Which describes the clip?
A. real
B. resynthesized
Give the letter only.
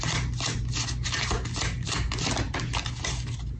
A